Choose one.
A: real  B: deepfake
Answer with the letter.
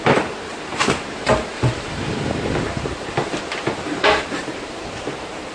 B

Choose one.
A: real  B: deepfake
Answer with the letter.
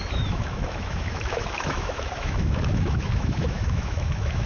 B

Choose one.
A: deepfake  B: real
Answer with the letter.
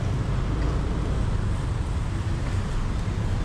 B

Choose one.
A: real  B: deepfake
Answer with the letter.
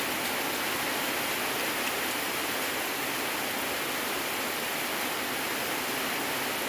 A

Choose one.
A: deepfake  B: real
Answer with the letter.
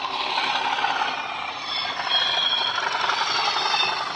B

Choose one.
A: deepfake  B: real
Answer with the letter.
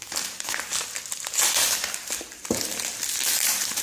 B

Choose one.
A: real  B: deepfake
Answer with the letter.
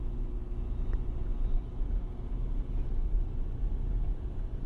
A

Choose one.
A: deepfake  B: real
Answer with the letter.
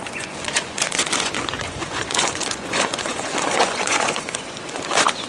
A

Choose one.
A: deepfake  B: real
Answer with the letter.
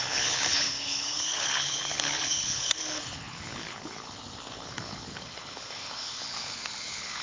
A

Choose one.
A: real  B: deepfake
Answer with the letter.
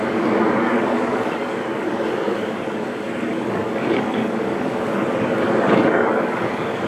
B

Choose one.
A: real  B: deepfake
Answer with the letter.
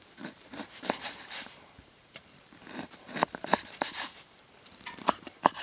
B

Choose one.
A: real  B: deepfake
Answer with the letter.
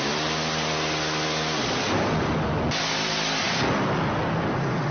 A